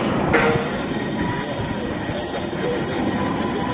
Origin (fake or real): real